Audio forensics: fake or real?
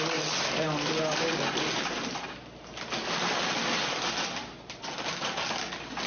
real